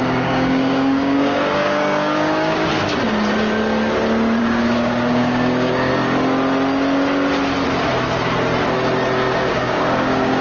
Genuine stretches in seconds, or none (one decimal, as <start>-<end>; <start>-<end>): 2.7-4.4; 5.9-9.3